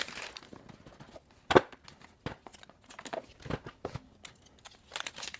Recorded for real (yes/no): yes